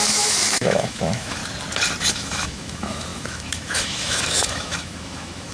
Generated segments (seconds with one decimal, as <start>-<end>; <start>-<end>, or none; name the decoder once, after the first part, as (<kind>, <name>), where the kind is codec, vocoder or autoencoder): 0.0-1.4 (autoencoder, DAC-VAE); 2.1-5.5